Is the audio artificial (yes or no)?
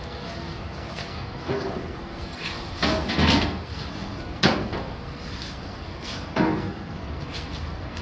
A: yes